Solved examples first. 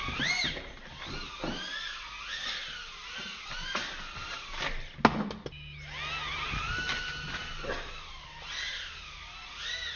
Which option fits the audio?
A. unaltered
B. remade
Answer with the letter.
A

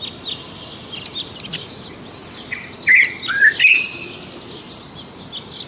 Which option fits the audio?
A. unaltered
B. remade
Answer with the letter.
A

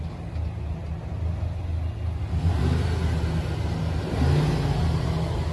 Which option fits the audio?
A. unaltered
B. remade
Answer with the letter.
A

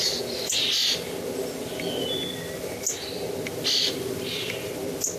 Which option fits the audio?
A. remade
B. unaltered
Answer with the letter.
B